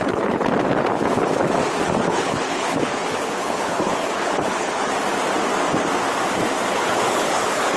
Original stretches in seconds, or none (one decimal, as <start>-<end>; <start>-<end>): 0.4-2.0; 4.9-6.7